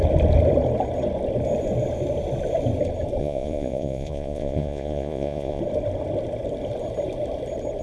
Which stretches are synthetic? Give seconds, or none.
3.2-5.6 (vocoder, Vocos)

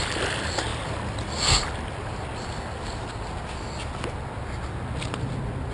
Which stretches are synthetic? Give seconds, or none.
none

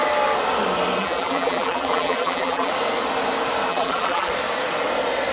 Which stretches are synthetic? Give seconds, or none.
1.0-2.7 (vocoder, BigVGAN v2); 3.7-4.3